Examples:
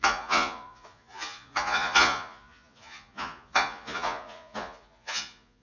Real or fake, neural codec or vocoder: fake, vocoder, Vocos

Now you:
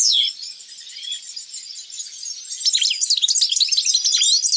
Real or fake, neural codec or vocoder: real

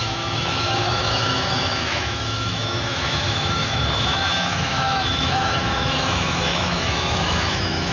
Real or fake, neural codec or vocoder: fake, autoencoder, DAC-VAE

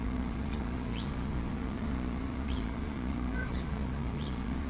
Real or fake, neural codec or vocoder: fake, vocoder, Vocos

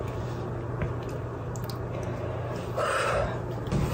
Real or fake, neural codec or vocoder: real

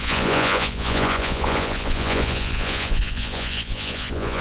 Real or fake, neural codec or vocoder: fake, vocoder, Vocos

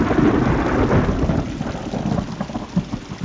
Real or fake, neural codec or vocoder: real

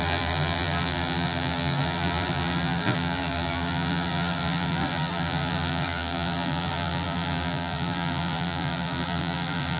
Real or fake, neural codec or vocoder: fake, vocoder, BigVGAN v2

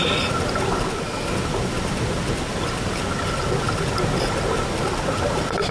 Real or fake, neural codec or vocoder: real